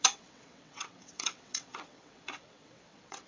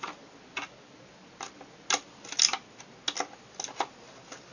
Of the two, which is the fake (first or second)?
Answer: first